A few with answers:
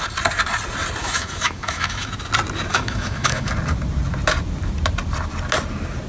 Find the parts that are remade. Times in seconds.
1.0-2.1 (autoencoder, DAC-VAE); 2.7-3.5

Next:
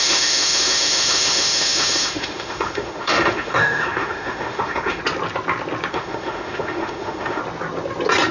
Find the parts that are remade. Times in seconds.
0.0-5.0 (autoencoder, DAC-VAE); 5.9-7.4